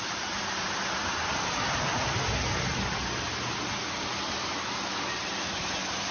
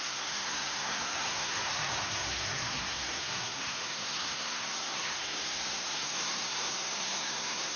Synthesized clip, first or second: second